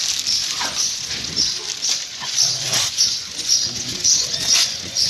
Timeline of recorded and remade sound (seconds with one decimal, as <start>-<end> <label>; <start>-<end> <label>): 0.0-0.4 recorded; 0.4-1.6 remade; 1.6-2.1 recorded; 2.1-5.1 remade